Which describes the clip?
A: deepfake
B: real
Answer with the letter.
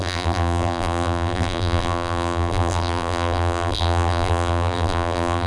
A